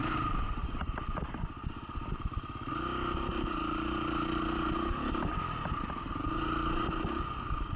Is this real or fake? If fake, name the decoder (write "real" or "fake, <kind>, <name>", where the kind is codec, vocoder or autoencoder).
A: real